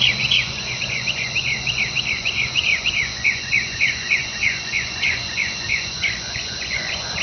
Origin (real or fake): fake